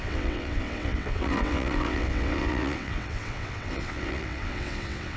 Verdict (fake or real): fake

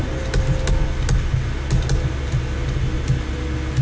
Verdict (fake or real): real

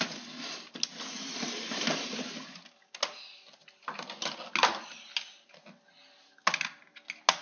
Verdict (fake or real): real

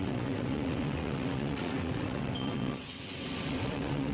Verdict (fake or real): fake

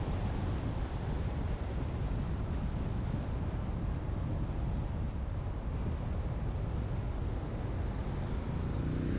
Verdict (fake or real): real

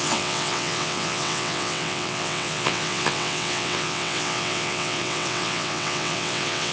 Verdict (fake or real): fake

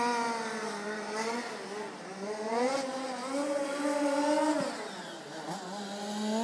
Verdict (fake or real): real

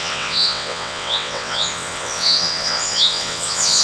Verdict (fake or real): fake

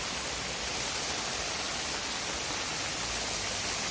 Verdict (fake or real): real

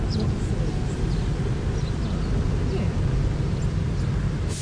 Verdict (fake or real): real